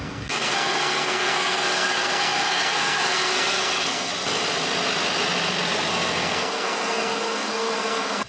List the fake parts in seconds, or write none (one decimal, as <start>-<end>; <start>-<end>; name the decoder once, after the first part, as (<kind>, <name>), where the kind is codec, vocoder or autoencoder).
0.0-4.1 (codec, SNAC); 5.9-8.3

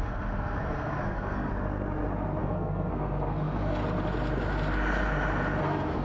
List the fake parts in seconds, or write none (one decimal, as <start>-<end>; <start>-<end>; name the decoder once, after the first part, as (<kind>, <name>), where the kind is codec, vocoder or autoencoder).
0.0-1.5 (codec, SNAC); 2.4-3.8; 5.6-6.0

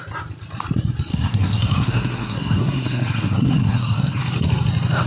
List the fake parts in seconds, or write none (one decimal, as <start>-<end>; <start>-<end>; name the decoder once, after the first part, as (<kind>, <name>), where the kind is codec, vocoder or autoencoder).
1.1-4.2 (codec, SNAC)

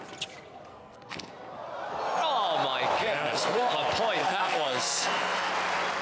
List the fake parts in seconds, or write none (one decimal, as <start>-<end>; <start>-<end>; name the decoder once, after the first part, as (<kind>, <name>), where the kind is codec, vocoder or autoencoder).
0.7-1.3 (codec, SNAC); 3.0-3.7; 4.2-5.5

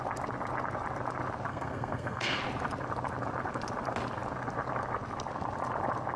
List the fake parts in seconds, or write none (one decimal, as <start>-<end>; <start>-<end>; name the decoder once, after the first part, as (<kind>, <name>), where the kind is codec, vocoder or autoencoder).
1.5-2.4 (codec, SNAC)

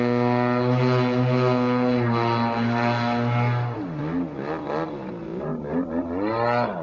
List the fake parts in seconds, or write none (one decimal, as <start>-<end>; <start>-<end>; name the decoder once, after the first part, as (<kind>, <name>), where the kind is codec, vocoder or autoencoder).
none

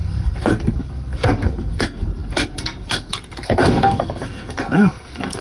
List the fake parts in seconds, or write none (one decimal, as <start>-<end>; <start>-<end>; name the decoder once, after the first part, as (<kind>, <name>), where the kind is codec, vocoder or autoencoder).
0.0-5.4 (codec, SNAC)